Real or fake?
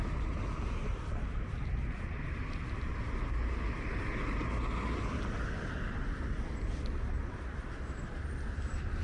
real